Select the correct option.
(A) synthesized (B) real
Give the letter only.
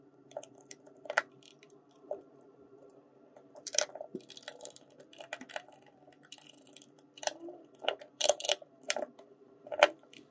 A